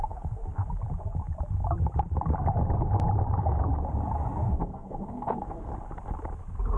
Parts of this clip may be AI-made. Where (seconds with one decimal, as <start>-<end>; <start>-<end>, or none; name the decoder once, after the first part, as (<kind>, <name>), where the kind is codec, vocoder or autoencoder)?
0.0-0.4 (codec, SNAC); 4.5-5.7